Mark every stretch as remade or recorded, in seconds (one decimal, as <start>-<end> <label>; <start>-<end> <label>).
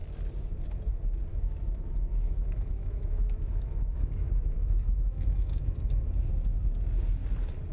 0.0-1.3 recorded; 1.3-5.9 remade; 5.9-7.7 recorded